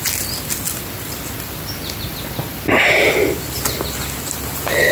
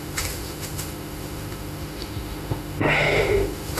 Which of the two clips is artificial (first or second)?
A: second